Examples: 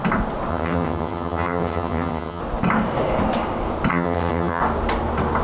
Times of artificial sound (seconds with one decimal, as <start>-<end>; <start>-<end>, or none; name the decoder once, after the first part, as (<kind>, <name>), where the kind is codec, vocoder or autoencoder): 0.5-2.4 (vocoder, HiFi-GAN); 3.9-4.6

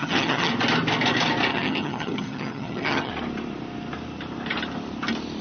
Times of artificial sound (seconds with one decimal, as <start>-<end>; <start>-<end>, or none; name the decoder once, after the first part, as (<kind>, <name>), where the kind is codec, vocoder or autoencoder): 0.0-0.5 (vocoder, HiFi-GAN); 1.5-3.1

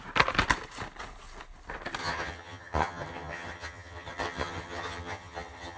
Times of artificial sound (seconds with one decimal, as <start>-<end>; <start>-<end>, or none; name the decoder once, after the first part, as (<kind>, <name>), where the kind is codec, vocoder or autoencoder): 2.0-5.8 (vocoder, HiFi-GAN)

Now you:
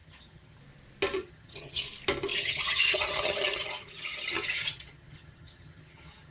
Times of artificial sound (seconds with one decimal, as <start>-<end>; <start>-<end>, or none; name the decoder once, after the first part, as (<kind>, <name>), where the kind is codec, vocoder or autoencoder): 0.0-0.6 (vocoder, HiFi-GAN); 1.2-1.8; 2.3-6.3

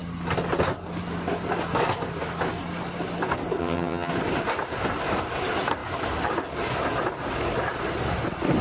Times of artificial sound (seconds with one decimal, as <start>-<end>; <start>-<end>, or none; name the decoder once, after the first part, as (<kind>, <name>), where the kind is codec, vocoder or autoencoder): 3.6-4.1 (vocoder, HiFi-GAN)

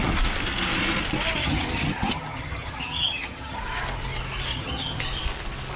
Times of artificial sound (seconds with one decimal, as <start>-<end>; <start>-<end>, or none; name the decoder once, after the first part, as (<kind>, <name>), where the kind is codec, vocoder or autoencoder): 1.4-3.6 (vocoder, HiFi-GAN); 4.5-5.0

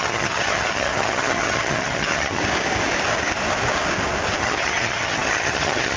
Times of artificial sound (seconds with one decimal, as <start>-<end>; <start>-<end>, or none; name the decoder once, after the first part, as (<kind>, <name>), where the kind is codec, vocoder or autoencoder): 0.0-2.4 (vocoder, HiFi-GAN); 4.4-6.0

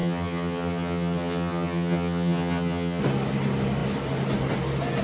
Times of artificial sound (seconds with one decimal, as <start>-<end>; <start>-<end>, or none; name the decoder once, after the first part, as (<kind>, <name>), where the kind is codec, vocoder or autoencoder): 0.0-3.0 (vocoder, HiFi-GAN)